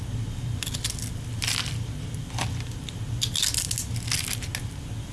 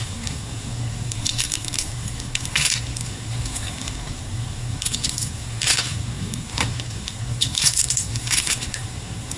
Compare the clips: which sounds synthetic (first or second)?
second